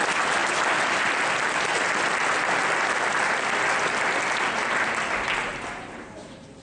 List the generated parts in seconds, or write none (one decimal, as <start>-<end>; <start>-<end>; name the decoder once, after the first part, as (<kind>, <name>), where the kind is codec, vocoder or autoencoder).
5.5-6.6 (vocoder, BigVGAN v2)